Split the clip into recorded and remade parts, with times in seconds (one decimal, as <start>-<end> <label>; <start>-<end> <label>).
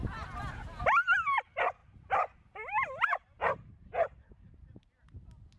0.0-5.6 recorded